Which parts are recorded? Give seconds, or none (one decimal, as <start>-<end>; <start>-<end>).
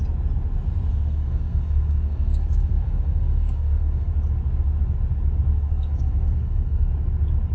0.0-0.9; 4.1-5.5; 6.9-7.5